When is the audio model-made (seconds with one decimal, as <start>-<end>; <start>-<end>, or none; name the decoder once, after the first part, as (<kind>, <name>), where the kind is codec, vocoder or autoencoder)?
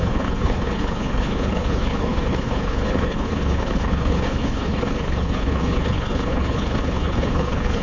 0.0-7.8 (codec, HILCodec)